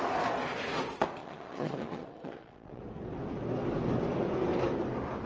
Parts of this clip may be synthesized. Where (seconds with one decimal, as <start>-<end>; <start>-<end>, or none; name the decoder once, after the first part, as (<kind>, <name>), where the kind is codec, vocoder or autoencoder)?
1.2-2.8 (vocoder, Vocos)